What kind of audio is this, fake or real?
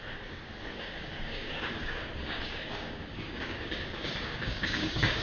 fake